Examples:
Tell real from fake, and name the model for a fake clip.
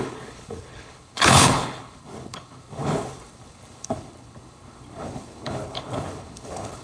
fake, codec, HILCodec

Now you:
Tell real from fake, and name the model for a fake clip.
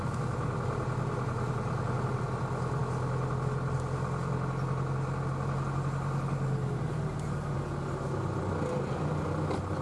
real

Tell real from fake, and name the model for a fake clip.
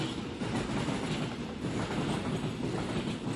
real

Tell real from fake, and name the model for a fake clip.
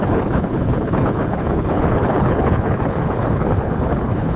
fake, codec, HILCodec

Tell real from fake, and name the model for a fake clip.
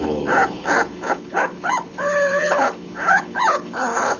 fake, codec, HILCodec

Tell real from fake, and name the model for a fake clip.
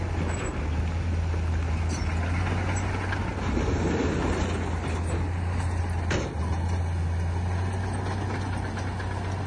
real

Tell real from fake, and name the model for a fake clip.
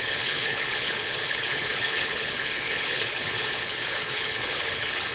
fake, codec, HILCodec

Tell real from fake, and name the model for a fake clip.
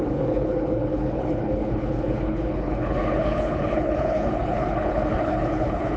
fake, codec, HILCodec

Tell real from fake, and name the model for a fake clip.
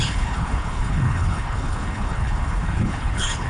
fake, codec, HILCodec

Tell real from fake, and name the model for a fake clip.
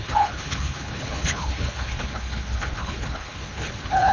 fake, codec, HILCodec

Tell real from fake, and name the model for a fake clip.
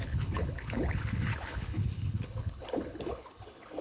fake, codec, HILCodec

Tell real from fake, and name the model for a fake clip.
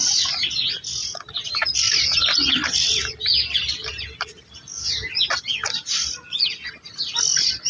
real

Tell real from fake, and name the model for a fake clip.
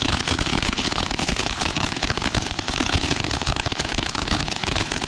fake, codec, HILCodec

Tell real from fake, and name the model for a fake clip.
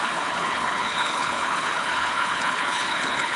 fake, codec, HILCodec